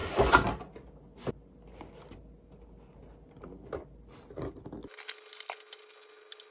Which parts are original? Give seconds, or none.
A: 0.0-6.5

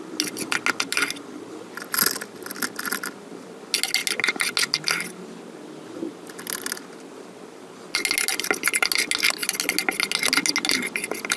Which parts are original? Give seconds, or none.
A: 0.0-11.4

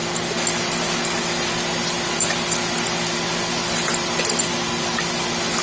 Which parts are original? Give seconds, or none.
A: 0.0-5.6

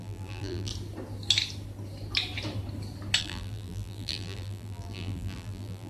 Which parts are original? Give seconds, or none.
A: 0.7-3.2